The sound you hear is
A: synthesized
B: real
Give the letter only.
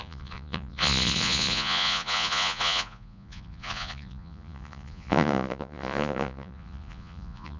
A